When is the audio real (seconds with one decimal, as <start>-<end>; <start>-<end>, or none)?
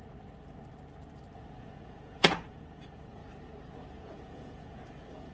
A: 0.0-1.6; 3.2-3.9